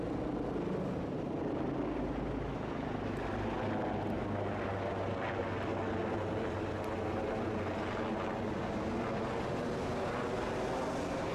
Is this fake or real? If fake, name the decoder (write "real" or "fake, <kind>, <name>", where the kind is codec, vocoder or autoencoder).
real